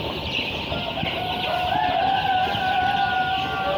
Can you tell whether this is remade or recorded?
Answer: recorded